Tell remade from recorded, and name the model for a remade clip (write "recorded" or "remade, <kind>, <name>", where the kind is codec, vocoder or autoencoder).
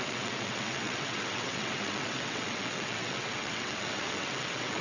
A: remade, vocoder, WaveNeXt